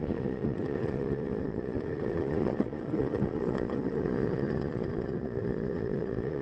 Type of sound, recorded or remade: remade